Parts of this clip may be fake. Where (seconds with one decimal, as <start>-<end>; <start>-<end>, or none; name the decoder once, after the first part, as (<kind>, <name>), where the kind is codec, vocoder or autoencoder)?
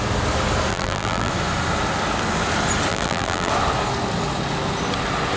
0.7-1.3 (vocoder, BigVGAN v2); 2.9-3.5